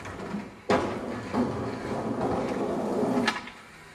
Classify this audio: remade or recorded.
recorded